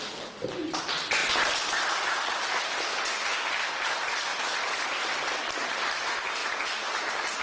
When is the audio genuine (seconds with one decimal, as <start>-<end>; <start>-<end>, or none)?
0.0-4.3; 5.9-7.4